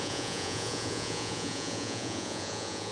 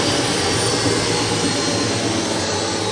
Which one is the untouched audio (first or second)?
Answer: second